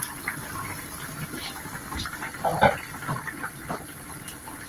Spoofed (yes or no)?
no